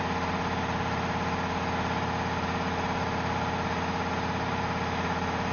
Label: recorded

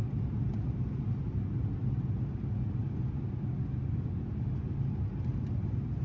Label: recorded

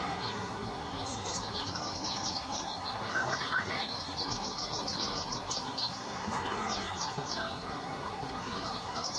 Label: remade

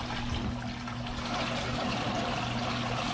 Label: recorded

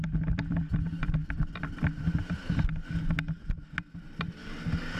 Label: recorded